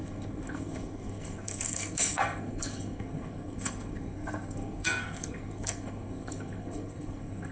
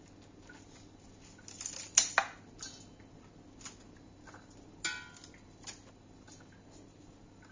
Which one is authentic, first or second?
second